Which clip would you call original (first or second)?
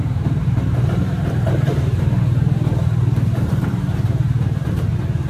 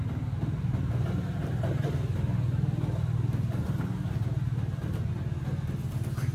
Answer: second